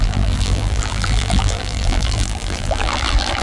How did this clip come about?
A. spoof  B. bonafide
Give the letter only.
A